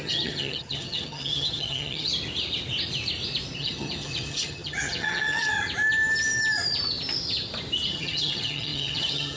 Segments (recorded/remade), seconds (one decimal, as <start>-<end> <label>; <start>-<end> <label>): 0.0-2.1 remade; 2.1-3.6 recorded; 3.6-5.5 remade; 5.5-7.9 recorded; 7.9-9.4 remade